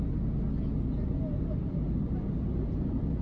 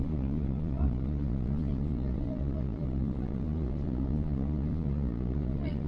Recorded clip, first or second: first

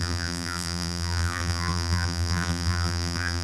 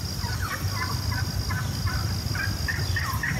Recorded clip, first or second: second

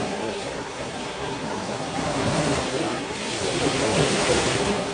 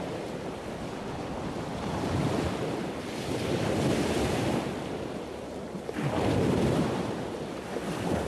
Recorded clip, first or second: second